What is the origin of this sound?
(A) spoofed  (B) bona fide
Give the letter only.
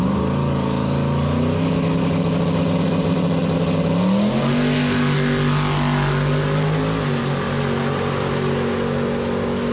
B